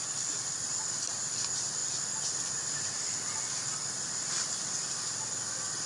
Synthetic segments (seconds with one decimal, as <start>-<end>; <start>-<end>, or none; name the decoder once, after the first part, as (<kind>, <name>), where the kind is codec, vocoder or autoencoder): 0.7-1.3 (vocoder, BigVGAN v2)

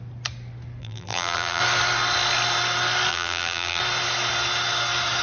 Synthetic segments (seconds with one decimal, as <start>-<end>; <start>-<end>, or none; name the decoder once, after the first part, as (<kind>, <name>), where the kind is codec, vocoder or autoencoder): 0.8-1.6 (vocoder, BigVGAN v2); 3.1-3.8

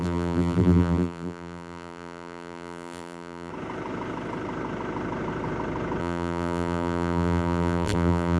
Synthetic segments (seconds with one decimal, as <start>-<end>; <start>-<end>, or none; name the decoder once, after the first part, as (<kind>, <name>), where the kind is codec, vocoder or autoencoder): 0.0-3.5 (vocoder, BigVGAN v2); 6.0-8.4